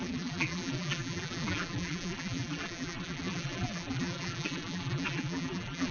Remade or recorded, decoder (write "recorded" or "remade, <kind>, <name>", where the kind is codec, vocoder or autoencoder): remade, vocoder, BigVGAN v2